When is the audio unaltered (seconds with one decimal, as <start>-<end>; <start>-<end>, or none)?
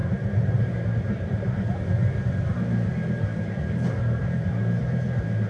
1.8-4.2; 4.8-5.5